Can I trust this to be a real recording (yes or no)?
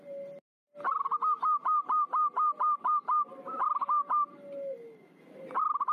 yes